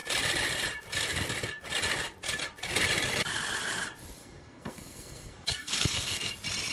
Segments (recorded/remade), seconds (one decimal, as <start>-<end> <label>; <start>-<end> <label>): 0.0-4.2 recorded; 4.2-6.3 remade; 6.3-6.7 recorded